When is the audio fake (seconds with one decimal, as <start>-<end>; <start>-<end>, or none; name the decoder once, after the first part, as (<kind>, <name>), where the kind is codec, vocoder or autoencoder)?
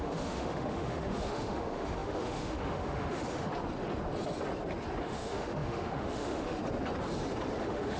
0.0-3.5 (autoencoder, DAC-VAE); 5.0-6.6; 7.6-8.0